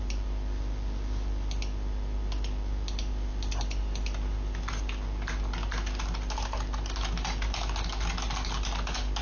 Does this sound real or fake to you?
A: real